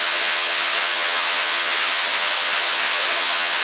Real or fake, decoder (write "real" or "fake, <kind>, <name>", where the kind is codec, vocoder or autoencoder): fake, vocoder, HiFi-GAN